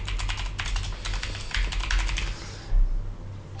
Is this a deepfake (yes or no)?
no